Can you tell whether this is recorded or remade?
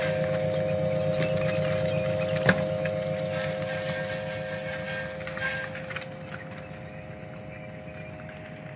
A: recorded